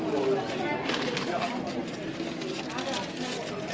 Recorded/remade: recorded